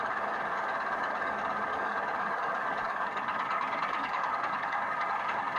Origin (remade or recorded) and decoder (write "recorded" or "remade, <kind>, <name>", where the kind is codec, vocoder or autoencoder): remade, codec, DAC